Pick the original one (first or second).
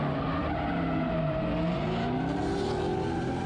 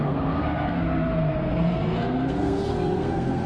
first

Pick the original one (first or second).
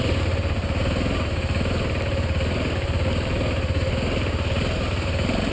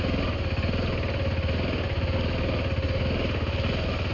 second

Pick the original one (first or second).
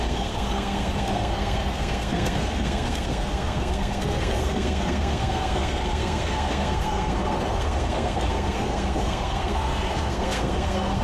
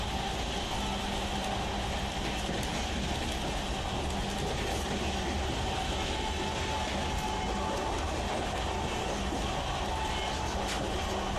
second